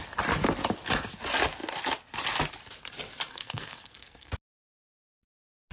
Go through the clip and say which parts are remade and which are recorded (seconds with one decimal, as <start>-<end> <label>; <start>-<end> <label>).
0.0-3.3 recorded; 3.3-4.3 remade; 4.3-5.7 recorded